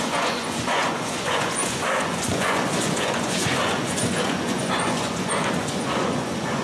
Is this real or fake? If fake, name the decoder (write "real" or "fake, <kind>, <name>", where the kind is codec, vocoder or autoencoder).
fake, vocoder, Vocos